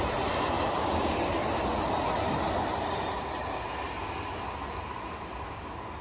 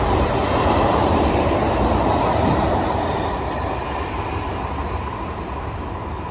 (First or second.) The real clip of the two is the first